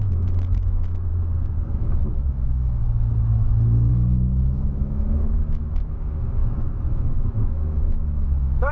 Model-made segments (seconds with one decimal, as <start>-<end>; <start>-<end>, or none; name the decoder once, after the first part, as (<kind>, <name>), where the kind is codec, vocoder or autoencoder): 0.0-1.1 (autoencoder, DAC-VAE); 1.7-2.8; 3.9-6.4; 6.9-8.7